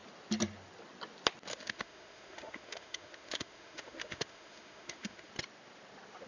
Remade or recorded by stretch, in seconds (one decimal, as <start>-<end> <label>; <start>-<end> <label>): 0.0-1.5 recorded; 1.5-5.3 remade; 5.3-6.3 recorded